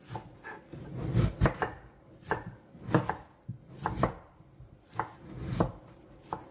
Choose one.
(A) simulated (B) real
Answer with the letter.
B